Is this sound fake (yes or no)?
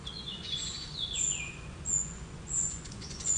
yes